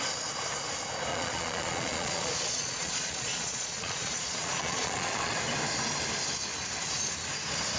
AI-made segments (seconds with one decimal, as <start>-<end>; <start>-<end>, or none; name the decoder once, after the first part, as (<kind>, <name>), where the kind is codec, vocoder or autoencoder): 1.1-5.4 (vocoder, Vocos)